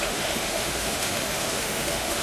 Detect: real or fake fake